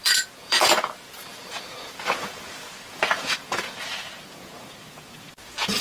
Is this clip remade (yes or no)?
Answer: yes